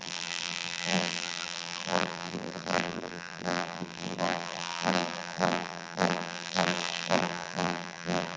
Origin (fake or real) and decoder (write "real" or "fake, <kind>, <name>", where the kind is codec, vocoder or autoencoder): fake, vocoder, BigVGAN v2